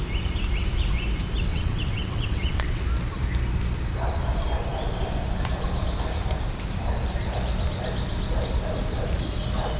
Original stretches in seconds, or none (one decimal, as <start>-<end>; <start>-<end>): 0.0-1.5; 2.8-9.8